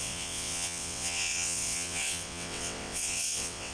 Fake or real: fake